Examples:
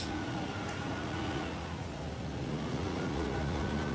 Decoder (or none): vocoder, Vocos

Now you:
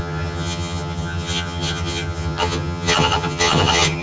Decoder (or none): vocoder, HiFi-GAN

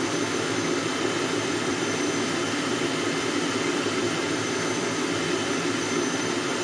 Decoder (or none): vocoder, BigVGAN v2